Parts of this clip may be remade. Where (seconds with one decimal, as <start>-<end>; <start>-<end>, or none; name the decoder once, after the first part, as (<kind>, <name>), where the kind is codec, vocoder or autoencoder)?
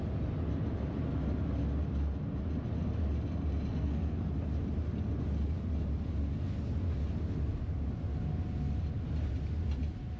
3.7-4.3 (codec, SNAC)